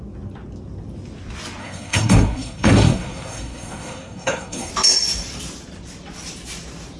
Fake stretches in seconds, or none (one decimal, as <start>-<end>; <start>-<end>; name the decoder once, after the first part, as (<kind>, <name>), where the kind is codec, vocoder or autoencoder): 1.6-4.7 (codec, SNAC)